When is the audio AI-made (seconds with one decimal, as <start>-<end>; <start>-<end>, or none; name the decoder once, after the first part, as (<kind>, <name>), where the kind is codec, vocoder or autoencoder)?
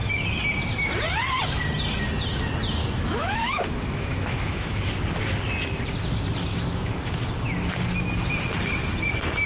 2.8-4.9 (autoencoder, DAC-VAE); 6.5-7.3